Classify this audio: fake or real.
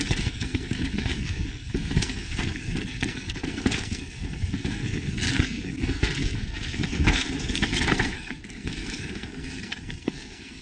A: fake